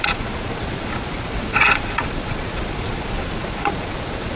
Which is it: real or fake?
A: fake